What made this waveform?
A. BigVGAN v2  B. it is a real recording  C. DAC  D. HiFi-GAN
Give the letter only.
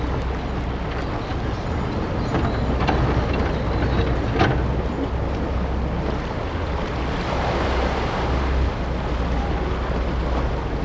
B